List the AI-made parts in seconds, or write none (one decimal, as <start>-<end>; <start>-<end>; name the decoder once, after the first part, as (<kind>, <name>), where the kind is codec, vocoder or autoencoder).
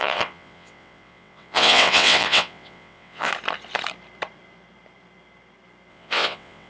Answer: 0.0-3.3 (vocoder, WaveNeXt); 5.9-6.7